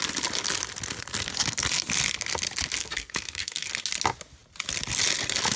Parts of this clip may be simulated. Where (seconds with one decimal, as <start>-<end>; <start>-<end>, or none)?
2.8-3.7